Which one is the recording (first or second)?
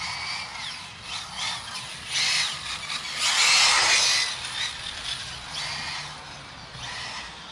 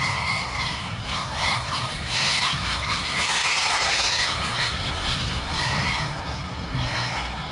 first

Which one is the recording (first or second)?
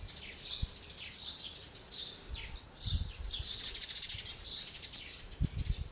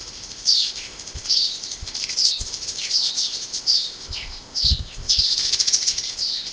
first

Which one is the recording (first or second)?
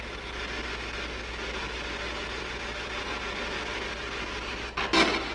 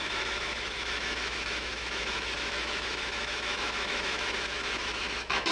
first